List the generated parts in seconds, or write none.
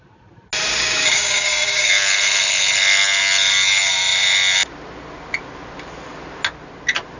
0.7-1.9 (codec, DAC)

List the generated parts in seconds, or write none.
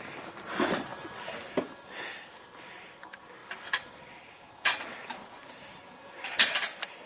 none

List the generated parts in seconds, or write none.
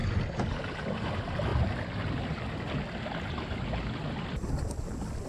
none